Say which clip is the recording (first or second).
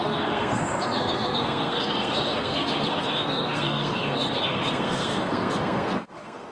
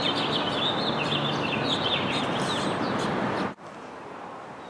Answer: second